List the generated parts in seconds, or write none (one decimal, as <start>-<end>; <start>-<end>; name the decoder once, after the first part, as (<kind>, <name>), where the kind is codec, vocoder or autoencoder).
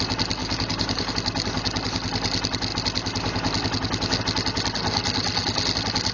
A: 0.4-1.1 (codec, DAC)